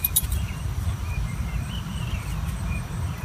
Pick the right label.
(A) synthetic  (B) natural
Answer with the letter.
A